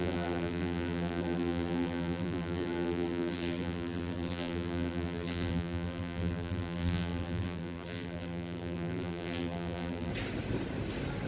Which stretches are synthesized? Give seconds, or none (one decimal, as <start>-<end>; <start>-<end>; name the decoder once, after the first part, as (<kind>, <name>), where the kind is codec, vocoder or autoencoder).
0.0-10.1 (vocoder, BigVGAN v2)